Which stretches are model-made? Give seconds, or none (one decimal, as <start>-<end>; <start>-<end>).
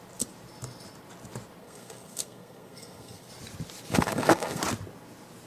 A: 1.6-3.3; 3.9-4.6